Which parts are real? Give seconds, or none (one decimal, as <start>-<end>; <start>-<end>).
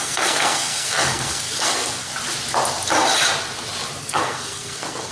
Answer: 2.1-4.0